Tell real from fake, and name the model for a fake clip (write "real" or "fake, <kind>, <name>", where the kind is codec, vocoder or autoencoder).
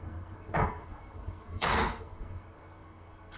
fake, codec, SNAC